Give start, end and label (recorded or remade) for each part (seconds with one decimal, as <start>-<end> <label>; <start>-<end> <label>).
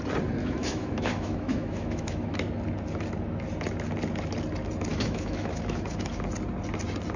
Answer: 0.0-0.4 recorded; 0.4-2.6 remade; 2.6-4.9 recorded; 4.9-6.1 remade; 6.1-7.2 recorded